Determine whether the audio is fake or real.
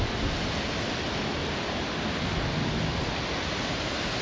real